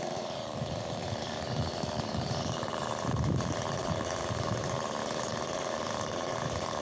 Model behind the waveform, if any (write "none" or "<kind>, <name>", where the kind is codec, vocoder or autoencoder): codec, DAC